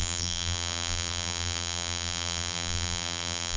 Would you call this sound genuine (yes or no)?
no